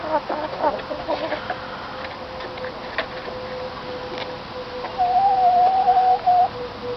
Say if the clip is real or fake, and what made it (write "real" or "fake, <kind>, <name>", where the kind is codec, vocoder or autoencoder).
real